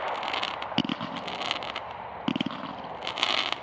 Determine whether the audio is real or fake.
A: real